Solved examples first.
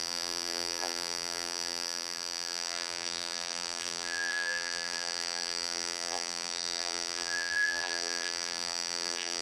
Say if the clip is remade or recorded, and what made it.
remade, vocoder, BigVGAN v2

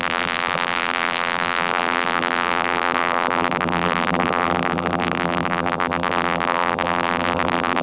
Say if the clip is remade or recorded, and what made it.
remade, vocoder, BigVGAN v2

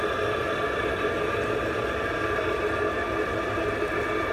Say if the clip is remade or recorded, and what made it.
recorded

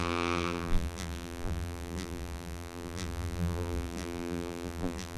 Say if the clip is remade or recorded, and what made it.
remade, vocoder, BigVGAN v2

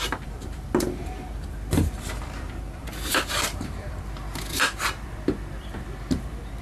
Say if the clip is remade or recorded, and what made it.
remade, vocoder, BigVGAN v2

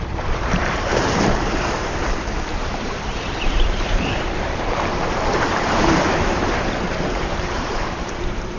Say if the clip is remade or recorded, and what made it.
remade, vocoder, BigVGAN v2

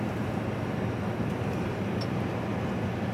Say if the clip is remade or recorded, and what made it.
recorded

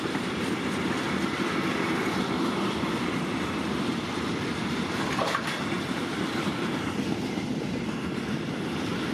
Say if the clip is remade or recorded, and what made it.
remade, vocoder, BigVGAN v2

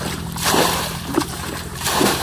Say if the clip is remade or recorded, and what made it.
remade, vocoder, BigVGAN v2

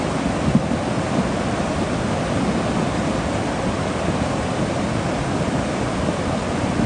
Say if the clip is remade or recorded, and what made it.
remade, vocoder, BigVGAN v2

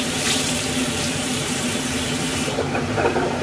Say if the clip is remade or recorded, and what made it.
remade, vocoder, BigVGAN v2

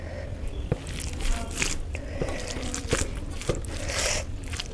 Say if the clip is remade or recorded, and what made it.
recorded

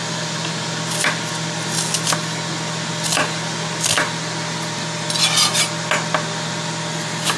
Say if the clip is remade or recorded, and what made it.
recorded